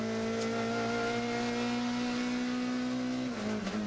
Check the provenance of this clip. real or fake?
real